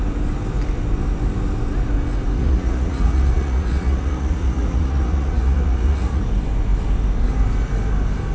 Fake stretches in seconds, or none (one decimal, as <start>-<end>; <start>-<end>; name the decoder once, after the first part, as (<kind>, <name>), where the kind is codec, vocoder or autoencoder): 2.4-6.2 (vocoder, Vocos)